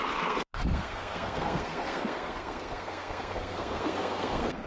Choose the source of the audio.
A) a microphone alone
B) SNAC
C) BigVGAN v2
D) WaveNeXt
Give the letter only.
B